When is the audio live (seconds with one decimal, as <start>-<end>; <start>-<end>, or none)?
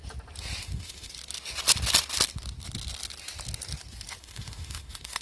0.0-0.6; 1.1-4.2